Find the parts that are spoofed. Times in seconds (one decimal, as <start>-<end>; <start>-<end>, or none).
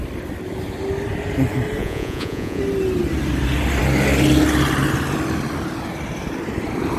1.8-2.6